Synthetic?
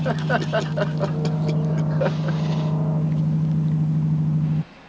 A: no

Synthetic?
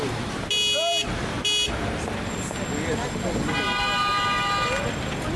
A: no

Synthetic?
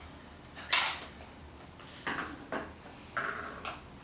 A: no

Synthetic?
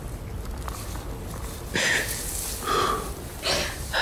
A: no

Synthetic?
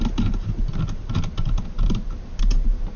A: no